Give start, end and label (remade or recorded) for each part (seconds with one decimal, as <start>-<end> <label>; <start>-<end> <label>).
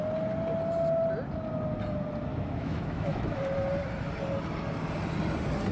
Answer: 0.0-2.3 recorded; 2.3-3.4 remade; 3.4-5.7 recorded